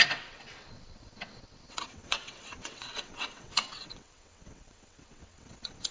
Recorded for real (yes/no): no